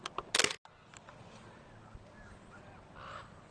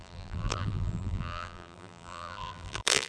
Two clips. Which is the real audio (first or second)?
first